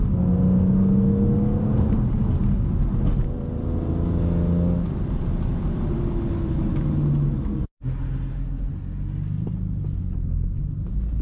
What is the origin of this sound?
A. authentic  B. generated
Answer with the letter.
A